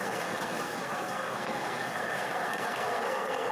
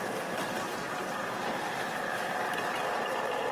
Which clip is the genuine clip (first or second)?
second